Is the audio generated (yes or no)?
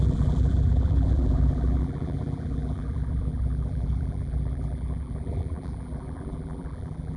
yes